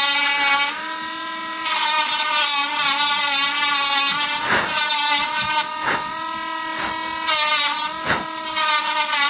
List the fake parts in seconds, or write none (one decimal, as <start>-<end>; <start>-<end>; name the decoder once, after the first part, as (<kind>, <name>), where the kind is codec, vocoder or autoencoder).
none